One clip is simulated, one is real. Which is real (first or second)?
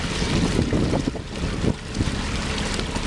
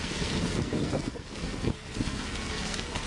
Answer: first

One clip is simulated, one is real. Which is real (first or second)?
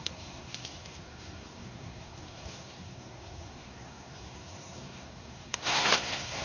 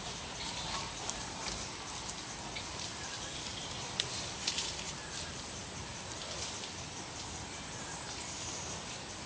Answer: second